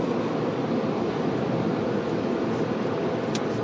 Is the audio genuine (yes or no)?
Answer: yes